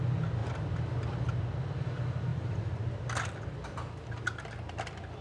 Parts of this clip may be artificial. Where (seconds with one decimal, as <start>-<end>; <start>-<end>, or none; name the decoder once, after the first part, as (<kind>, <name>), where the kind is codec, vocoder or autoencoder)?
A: none